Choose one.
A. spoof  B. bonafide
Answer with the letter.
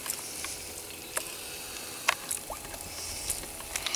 B